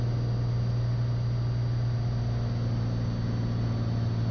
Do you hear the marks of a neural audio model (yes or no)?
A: no